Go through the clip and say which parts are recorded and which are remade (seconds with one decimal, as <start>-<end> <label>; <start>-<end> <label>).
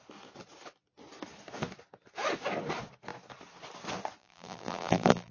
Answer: 0.0-4.2 recorded; 4.2-5.3 remade